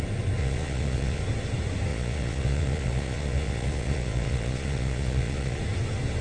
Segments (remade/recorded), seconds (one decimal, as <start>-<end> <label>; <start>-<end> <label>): 0.0-0.4 recorded; 0.4-1.2 remade; 1.2-1.9 recorded; 1.9-5.6 remade; 5.6-6.2 recorded